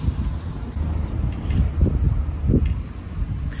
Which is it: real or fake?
real